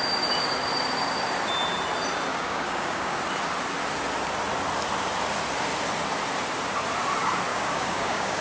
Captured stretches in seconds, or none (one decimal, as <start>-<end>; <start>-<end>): 0.0-2.3; 3.2-7.5